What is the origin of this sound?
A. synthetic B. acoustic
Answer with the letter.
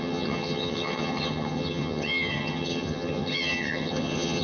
A